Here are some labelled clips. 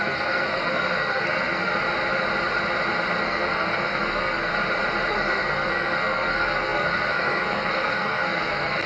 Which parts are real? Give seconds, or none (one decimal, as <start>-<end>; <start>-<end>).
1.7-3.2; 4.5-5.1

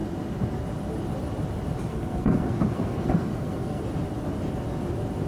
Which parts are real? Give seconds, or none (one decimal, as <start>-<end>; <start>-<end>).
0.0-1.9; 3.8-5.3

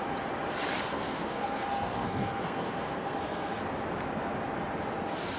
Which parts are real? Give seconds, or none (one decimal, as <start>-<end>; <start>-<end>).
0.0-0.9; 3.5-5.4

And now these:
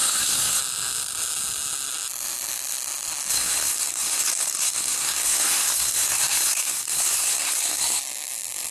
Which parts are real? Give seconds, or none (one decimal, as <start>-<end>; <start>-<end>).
0.6-3.3; 8.0-8.7

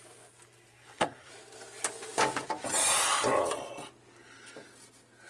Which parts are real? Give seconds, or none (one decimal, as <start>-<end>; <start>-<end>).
0.0-0.7; 1.3-5.3

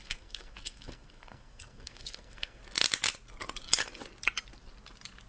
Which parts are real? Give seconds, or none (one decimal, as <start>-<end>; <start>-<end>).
2.6-5.3